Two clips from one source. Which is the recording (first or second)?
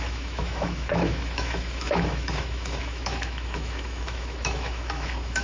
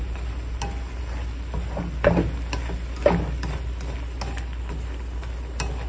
second